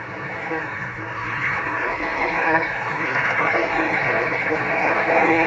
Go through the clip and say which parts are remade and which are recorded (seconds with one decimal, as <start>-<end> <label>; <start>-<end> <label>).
0.0-5.5 remade